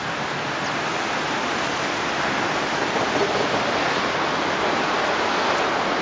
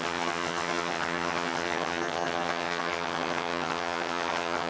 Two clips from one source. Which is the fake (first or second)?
second